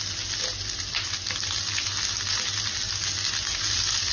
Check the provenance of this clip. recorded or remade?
recorded